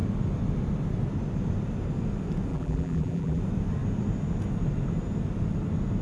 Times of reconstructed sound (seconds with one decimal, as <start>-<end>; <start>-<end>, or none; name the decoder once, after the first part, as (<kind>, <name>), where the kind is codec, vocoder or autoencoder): 2.5-3.4 (vocoder, BigVGAN v2)